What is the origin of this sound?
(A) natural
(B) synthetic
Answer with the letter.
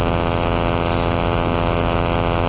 A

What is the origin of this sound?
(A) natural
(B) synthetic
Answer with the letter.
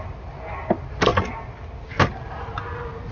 A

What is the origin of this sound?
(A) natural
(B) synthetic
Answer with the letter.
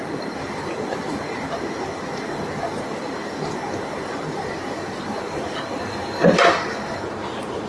B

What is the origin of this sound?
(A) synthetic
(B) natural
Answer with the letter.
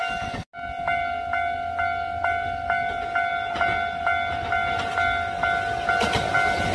B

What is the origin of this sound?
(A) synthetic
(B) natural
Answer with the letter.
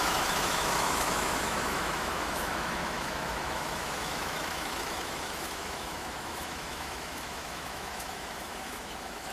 A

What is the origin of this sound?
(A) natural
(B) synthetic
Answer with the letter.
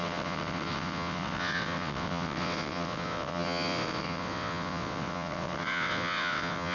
B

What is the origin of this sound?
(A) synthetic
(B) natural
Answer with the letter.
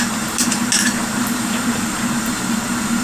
B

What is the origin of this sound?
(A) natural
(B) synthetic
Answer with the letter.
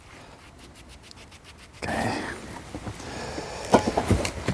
A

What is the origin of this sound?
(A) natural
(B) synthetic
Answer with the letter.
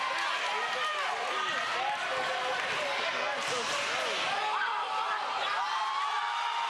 A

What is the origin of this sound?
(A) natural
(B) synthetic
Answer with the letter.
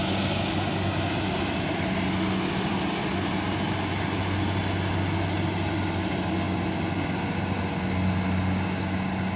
A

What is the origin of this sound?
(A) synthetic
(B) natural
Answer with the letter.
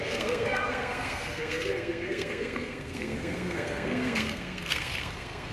A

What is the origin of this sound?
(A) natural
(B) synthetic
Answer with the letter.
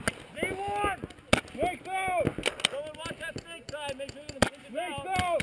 A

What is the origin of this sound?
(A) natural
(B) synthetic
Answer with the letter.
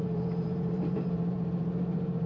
B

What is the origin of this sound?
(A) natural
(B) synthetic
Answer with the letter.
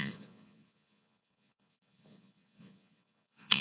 B